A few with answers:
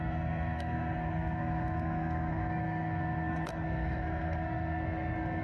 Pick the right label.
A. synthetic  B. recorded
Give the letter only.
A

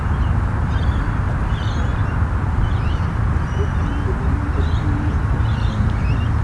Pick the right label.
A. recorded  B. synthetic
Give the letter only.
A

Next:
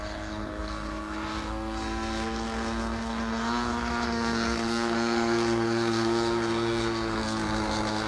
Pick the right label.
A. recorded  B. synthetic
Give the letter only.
B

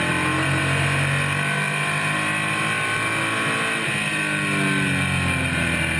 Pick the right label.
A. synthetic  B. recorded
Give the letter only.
B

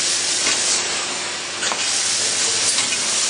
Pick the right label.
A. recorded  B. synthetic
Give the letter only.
A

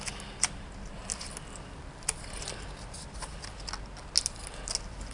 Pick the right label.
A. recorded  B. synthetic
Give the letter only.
A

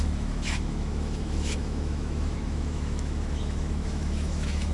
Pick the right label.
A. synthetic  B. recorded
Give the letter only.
A